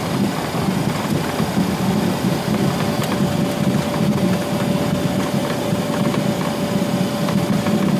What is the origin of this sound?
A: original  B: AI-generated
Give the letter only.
A